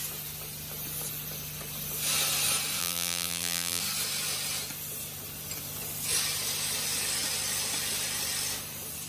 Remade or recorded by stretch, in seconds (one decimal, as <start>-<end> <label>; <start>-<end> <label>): 0.0-2.8 recorded; 2.8-3.8 remade; 3.8-9.1 recorded